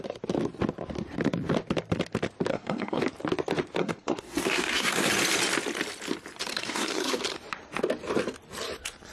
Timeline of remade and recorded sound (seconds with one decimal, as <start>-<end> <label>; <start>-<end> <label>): 0.0-2.5 recorded; 2.5-3.0 remade; 3.0-3.8 recorded; 3.8-5.1 remade; 5.1-6.5 recorded; 6.5-7.2 remade; 7.2-9.1 recorded